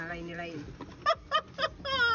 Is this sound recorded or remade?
recorded